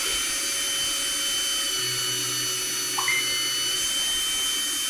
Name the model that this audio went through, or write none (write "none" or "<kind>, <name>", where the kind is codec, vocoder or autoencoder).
none